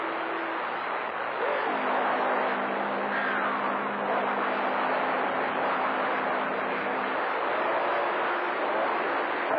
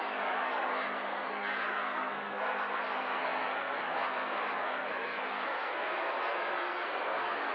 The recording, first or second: first